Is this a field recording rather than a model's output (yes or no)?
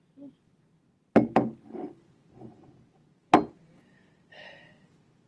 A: yes